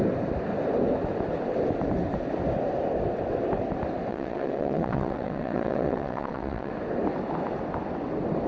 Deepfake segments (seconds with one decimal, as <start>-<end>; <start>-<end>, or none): 4.1-6.7